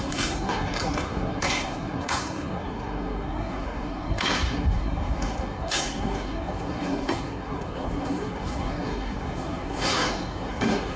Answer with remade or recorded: remade